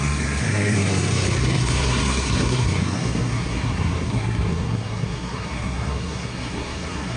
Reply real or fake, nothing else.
fake